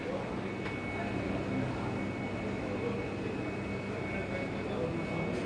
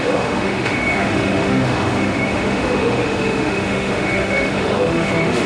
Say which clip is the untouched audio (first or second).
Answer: first